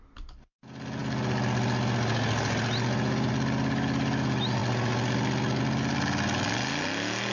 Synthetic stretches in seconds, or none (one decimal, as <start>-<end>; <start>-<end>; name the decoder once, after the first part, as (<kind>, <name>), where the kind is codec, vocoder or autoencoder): none

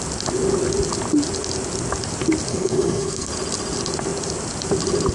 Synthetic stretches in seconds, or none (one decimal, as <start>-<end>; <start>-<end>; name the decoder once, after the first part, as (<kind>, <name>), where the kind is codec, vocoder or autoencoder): 2.5-3.3 (codec, SNAC)

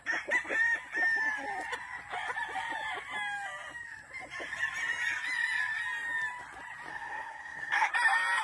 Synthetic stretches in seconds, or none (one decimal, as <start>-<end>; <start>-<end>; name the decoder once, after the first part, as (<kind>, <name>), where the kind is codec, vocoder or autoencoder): 6.9-7.9 (codec, SNAC)

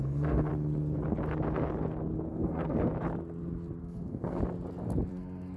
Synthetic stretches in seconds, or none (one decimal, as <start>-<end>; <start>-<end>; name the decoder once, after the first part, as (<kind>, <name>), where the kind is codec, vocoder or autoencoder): 0.0-0.5 (codec, SNAC); 2.3-2.9; 3.8-4.4; 5.1-5.6